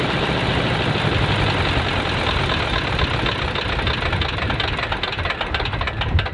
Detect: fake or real real